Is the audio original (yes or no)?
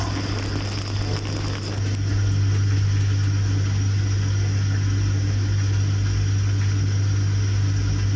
yes